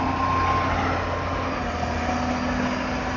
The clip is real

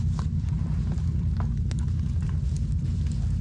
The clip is real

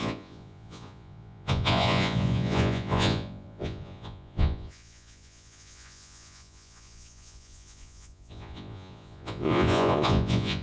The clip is fake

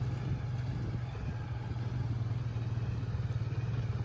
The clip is real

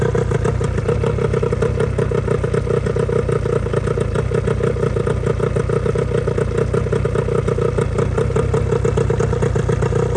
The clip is real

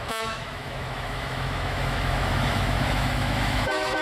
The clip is fake